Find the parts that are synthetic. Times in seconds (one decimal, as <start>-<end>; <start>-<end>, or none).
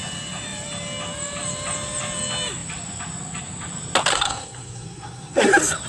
4.1-5.5